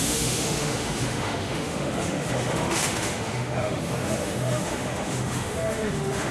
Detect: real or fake fake